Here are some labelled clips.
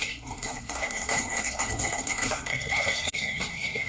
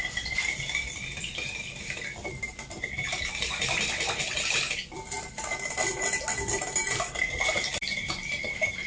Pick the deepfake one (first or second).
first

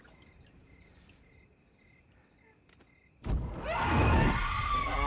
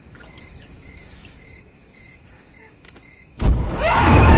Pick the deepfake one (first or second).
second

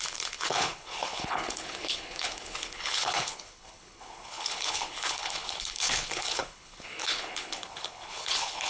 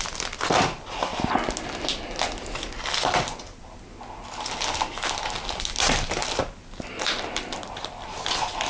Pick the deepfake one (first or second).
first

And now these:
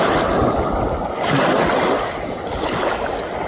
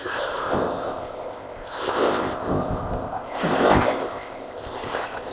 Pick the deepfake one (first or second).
second